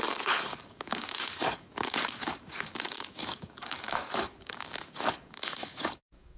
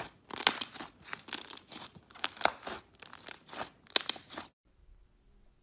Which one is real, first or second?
second